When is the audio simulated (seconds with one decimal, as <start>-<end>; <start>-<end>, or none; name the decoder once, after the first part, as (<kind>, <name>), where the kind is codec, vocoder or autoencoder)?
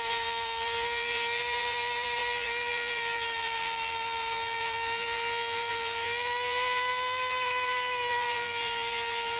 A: 0.0-9.4 (vocoder, BigVGAN v2)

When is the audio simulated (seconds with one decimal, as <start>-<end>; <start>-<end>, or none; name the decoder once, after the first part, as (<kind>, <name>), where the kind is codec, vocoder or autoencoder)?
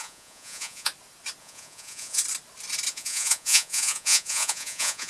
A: 0.0-0.9 (vocoder, Vocos); 1.4-2.2; 2.9-5.1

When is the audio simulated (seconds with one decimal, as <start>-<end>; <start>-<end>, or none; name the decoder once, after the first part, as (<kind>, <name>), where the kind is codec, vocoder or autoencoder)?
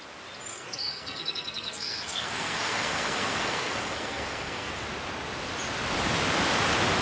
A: 0.5-4.7 (codec, SNAC)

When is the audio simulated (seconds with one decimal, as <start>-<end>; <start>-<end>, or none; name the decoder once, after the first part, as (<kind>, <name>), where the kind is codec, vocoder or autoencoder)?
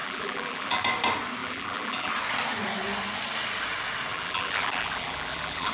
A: 0.0-0.8 (vocoder, BigVGAN v2); 1.4-2.1; 4.1-5.7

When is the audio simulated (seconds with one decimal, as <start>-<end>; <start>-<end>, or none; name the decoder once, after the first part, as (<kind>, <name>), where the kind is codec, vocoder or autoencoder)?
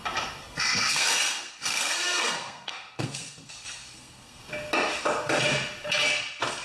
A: 0.4-4.4 (codec, SNAC)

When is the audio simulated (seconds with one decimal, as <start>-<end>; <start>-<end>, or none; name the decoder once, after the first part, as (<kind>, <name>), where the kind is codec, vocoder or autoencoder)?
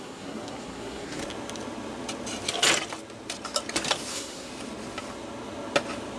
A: 0.0-1.2 (codec, SNAC); 4.1-4.5